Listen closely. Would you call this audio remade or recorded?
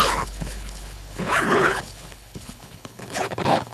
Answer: remade